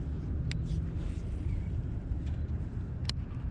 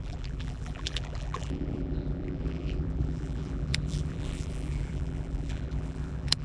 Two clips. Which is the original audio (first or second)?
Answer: first